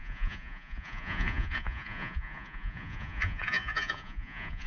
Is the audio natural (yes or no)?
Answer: no